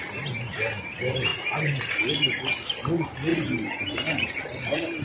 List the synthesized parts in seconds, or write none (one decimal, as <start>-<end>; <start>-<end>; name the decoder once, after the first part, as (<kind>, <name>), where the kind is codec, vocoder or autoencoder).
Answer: none